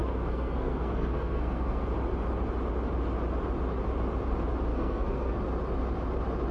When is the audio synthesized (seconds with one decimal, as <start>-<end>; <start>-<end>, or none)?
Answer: 0.0-1.8; 4.7-5.4